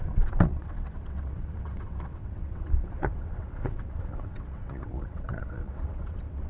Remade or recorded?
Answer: remade